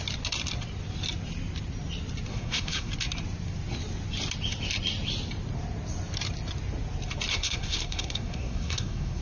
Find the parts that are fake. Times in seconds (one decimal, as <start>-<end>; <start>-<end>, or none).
2.3-2.9; 7.3-9.2